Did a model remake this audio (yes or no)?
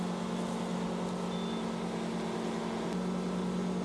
no